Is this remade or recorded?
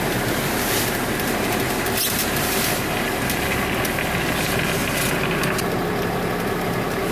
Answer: recorded